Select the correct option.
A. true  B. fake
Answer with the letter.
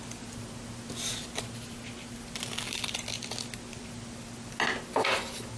A